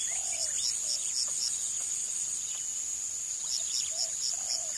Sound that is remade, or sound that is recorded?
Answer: recorded